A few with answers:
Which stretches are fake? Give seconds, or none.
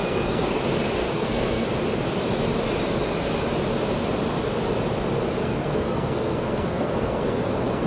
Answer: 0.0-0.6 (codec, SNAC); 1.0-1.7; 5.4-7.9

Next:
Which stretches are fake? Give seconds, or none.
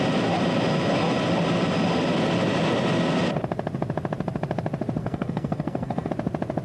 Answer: 5.0-6.1 (codec, SNAC)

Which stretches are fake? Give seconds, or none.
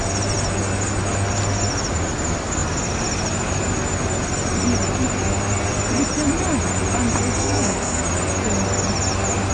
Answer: 7.4-8.0 (codec, SNAC)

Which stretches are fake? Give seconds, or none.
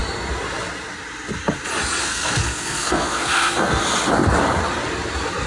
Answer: 2.0-3.8 (codec, SNAC)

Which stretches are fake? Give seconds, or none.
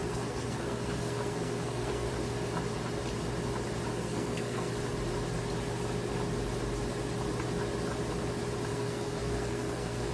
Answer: 0.0-2.1 (codec, SNAC); 3.9-4.7; 8.7-10.1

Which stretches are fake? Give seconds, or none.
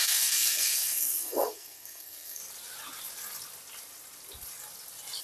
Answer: 0.0-2.4 (codec, SNAC)